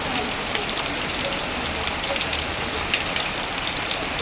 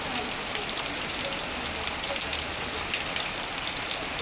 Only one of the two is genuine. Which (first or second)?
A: second